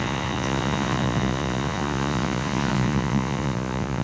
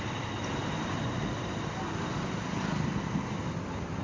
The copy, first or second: first